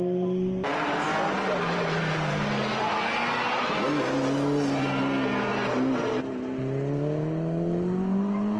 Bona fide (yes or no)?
yes